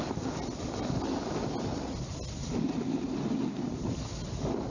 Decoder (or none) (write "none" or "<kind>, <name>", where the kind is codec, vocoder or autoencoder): none